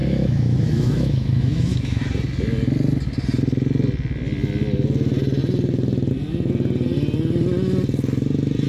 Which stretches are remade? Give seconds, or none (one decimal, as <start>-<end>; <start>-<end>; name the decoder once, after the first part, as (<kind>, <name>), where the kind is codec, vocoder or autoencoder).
0.0-2.0 (autoencoder, DAC-VAE)